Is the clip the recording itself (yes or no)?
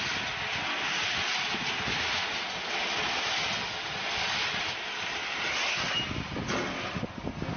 yes